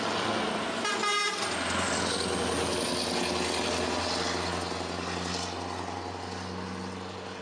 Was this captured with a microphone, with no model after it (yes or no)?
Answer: yes